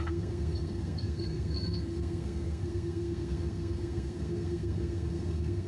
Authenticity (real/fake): fake